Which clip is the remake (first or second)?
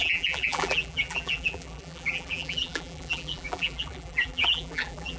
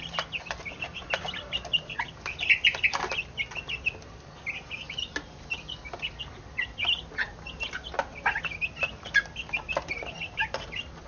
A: first